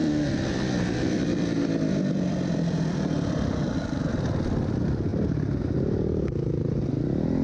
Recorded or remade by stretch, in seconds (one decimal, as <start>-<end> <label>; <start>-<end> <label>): 0.0-4.1 remade; 4.1-5.1 recorded; 5.1-5.6 remade; 5.6-7.4 recorded